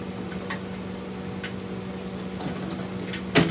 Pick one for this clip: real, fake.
real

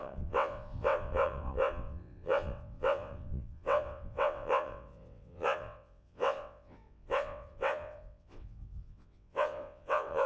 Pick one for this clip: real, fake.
fake